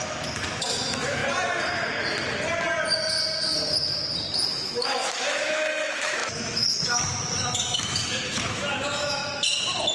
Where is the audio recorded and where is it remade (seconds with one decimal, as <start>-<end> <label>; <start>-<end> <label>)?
0.0-1.2 remade; 1.2-4.5 recorded; 4.5-9.2 remade; 9.2-9.9 recorded